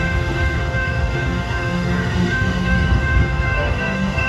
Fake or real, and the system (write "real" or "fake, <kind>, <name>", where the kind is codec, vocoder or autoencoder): fake, autoencoder, DAC-VAE